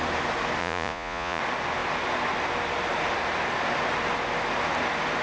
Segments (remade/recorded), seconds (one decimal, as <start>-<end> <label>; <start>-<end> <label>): 0.0-0.6 recorded; 0.6-1.4 remade; 1.4-5.2 recorded